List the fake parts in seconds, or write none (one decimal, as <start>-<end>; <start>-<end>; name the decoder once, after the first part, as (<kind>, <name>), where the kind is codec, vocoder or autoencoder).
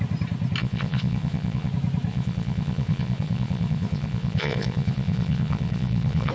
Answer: 0.6-1.7 (vocoder, Vocos); 2.1-6.3